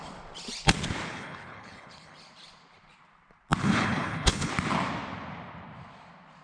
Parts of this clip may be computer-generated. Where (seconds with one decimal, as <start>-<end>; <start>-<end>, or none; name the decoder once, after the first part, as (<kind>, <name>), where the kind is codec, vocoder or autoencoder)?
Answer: 1.1-2.2 (codec, HILCodec); 3.6-4.5